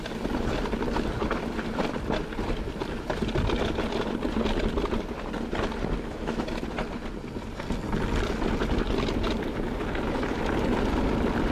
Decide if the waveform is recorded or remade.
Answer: recorded